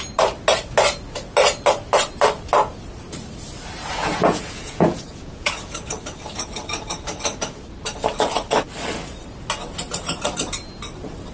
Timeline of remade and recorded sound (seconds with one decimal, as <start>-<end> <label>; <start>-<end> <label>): 0.0-4.0 recorded; 4.0-5.7 remade; 5.7-11.3 recorded